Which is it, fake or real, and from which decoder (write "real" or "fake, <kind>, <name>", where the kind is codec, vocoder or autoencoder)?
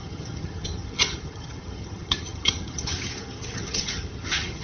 fake, vocoder, HiFi-GAN